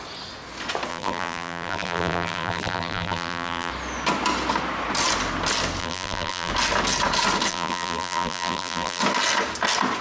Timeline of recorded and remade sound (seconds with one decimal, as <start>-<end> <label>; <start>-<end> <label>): 0.0-0.9 recorded; 0.9-3.7 remade; 3.7-5.8 recorded; 5.8-6.5 remade; 6.5-7.5 recorded; 7.5-9.0 remade; 9.0-10.0 recorded